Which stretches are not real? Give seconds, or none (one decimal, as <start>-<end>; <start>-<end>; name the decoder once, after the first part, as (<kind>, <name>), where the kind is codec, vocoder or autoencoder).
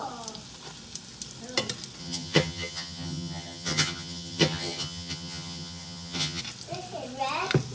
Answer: 2.0-6.4 (vocoder, HiFi-GAN)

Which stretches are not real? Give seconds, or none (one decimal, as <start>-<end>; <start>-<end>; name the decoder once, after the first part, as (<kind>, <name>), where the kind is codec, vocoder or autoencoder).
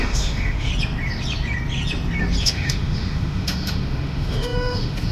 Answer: 0.0-0.7 (autoencoder, DAC-VAE); 2.4-5.1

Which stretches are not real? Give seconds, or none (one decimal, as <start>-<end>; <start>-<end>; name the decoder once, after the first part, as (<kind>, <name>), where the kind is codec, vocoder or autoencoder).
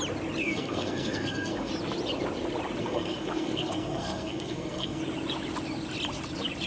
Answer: 0.4-1.7 (codec, SNAC); 2.8-5.0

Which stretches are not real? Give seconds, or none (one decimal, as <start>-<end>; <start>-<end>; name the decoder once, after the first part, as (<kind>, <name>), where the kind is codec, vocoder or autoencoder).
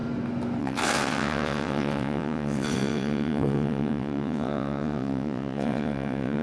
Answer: 0.6-6.4 (vocoder, WaveNeXt)